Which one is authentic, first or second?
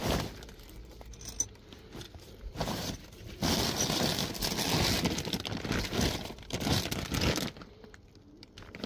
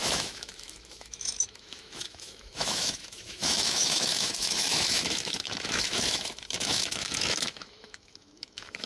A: first